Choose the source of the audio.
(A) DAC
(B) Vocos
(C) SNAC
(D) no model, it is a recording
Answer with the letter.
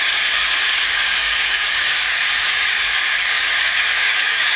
A